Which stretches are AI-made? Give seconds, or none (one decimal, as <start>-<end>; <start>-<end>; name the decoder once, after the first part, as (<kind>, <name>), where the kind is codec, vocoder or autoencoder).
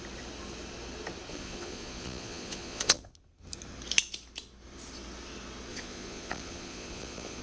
1.3-3.1 (vocoder, Vocos); 5.7-7.4